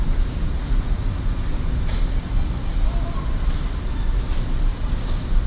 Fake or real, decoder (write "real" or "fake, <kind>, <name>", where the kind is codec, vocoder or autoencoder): fake, vocoder, BigVGAN v2